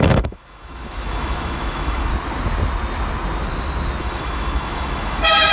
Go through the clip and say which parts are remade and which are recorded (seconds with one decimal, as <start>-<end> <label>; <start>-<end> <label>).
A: 0.0-2.1 remade; 2.1-4.0 recorded; 4.0-5.5 remade